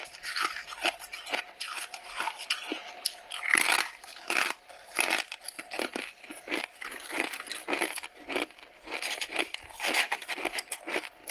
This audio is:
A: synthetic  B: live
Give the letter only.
A